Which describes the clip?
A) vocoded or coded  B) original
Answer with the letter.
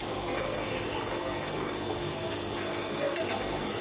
A